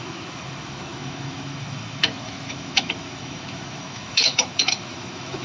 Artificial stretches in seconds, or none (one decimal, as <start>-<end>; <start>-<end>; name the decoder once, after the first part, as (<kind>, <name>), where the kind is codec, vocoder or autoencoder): 0.0-5.4 (autoencoder, DAC-VAE)